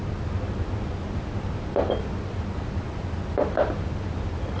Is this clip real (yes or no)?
yes